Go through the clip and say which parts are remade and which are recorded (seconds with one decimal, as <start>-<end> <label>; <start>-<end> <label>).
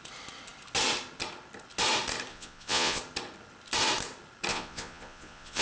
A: 0.0-2.3 recorded; 2.3-3.0 remade; 3.0-4.5 recorded; 4.5-5.6 remade